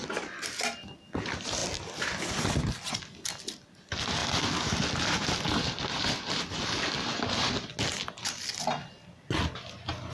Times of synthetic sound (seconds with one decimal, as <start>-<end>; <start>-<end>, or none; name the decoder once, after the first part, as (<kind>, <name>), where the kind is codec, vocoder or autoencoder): none